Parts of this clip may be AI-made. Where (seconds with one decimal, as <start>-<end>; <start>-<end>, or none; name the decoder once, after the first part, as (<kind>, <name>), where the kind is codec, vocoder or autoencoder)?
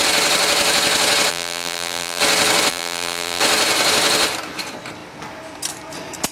1.3-2.2 (vocoder, BigVGAN v2); 2.7-3.4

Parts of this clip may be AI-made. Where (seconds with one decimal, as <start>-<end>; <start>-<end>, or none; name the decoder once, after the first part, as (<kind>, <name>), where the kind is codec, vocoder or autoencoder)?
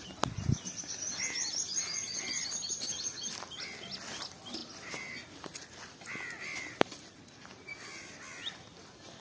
4.6-6.7 (vocoder, BigVGAN v2)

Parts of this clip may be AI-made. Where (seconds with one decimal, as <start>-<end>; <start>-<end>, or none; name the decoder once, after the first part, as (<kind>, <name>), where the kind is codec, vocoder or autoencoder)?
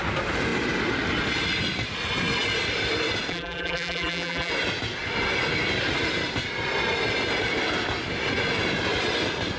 3.3-4.5 (vocoder, BigVGAN v2)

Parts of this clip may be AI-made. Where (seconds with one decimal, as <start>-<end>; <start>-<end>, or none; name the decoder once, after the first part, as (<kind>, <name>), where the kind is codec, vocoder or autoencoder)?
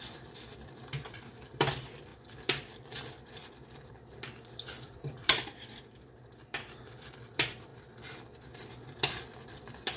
0.0-7.7 (vocoder, BigVGAN v2); 9.2-10.0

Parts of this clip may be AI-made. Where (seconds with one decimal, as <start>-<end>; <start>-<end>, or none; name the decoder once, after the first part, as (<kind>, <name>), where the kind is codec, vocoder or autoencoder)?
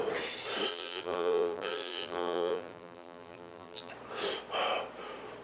0.7-3.9 (vocoder, BigVGAN v2)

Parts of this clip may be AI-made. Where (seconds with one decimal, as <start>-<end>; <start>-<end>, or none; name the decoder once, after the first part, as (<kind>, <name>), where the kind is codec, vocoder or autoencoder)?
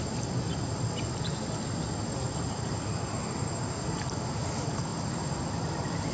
none